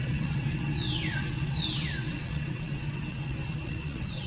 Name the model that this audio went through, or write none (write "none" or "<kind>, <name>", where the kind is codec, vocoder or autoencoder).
vocoder, WaveNeXt